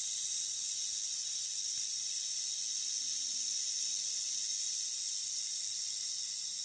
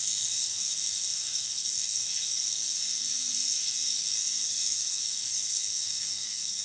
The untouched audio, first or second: first